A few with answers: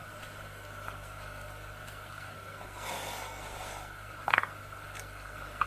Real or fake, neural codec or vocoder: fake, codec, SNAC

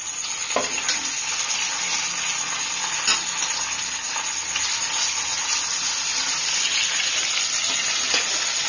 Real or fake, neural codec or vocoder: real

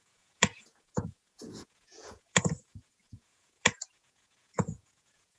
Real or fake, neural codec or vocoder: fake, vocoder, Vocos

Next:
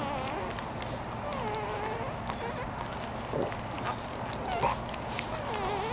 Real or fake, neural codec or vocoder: real